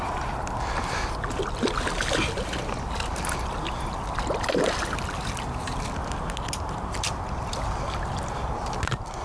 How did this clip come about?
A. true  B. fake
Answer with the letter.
A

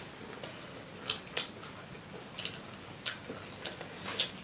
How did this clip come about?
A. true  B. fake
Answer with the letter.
A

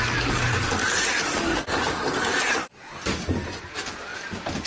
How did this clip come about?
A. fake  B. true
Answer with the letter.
B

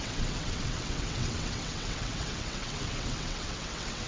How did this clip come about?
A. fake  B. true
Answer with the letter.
A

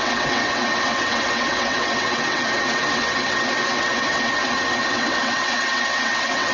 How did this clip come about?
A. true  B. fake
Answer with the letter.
B